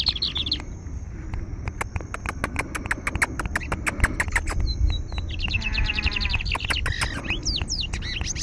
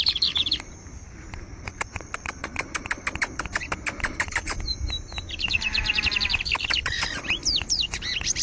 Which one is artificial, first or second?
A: second